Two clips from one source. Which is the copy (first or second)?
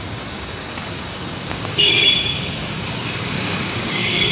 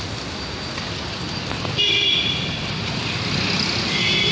first